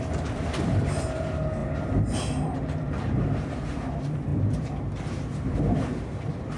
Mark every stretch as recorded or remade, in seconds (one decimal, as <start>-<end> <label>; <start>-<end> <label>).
0.0-6.6 remade